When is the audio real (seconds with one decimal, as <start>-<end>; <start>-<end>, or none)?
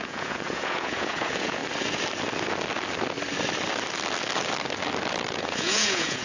1.6-5.3